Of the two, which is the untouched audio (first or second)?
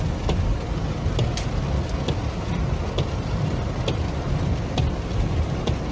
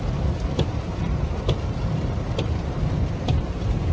first